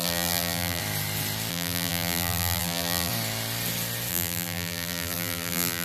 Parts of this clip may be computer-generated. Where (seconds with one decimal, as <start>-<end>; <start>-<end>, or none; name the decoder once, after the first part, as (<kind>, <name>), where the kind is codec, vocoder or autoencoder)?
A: 0.0-0.8 (vocoder, BigVGAN v2); 1.5-3.1; 4.1-5.8